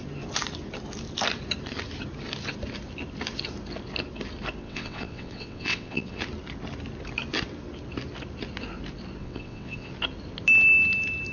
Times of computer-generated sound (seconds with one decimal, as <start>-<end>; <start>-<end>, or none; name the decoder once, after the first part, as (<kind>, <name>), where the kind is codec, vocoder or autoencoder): 4.6-6.2 (vocoder, WaveNeXt); 9.2-9.9